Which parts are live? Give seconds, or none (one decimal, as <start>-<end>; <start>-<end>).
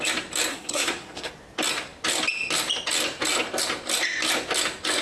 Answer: 0.0-0.5; 1.3-5.0